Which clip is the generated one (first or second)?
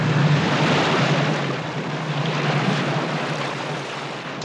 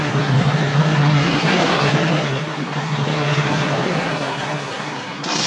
second